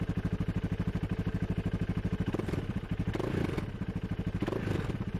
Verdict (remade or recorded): recorded